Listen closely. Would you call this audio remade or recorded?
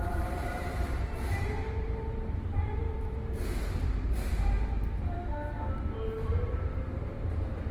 remade